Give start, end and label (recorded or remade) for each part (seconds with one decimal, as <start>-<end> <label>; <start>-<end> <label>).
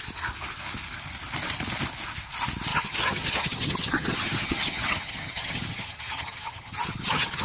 0.0-2.7 recorded; 2.7-7.4 remade